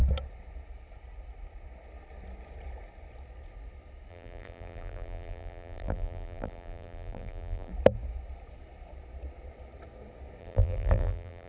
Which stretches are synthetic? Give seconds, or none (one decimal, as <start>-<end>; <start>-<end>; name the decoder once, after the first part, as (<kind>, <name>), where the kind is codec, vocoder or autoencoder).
4.1-7.7 (vocoder, BigVGAN v2); 10.4-11.5